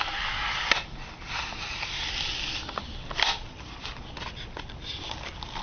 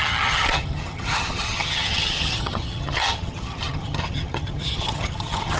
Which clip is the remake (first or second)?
second